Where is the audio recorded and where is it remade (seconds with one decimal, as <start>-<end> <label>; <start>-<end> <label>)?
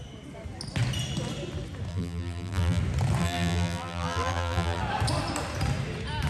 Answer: 0.0-1.9 recorded; 1.9-2.8 remade; 2.8-3.2 recorded; 3.2-4.8 remade; 4.8-6.3 recorded